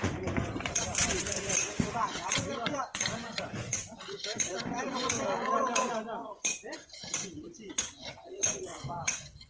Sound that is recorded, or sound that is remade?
remade